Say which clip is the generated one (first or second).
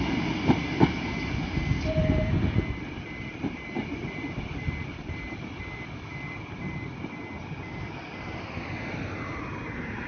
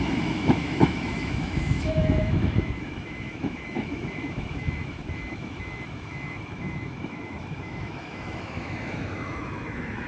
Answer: second